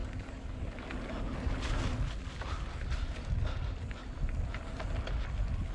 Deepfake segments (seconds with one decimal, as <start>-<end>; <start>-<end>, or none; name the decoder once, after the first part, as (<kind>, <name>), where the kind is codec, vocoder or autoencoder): 0.0-0.8 (codec, DAC)